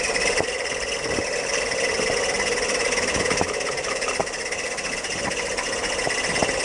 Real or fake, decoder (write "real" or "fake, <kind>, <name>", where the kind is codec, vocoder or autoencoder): real